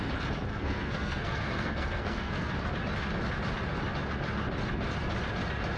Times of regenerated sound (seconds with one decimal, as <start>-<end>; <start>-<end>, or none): 0.5-2.5